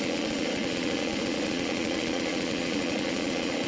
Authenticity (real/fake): fake